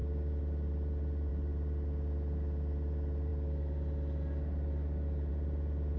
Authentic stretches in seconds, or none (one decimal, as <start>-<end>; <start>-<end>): 0.0-6.0